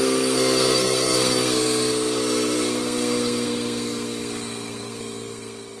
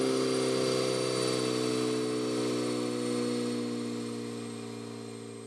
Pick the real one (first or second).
second